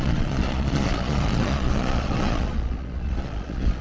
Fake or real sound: fake